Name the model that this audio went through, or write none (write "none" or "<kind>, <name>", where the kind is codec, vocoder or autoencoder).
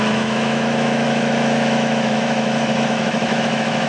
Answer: autoencoder, DAC-VAE